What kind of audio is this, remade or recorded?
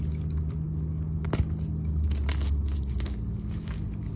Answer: recorded